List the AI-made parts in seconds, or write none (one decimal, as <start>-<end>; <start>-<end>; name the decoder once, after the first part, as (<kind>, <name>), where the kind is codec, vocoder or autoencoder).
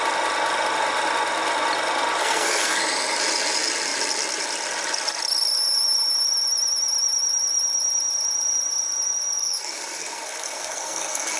2.2-2.8 (codec, SNAC); 9.4-11.4